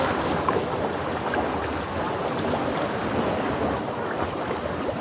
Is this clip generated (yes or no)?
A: no